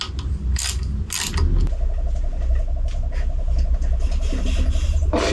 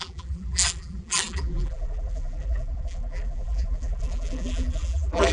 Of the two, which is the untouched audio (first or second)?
first